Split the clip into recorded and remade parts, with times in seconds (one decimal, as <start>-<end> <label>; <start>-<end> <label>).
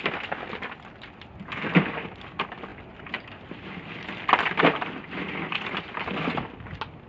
0.0-7.1 recorded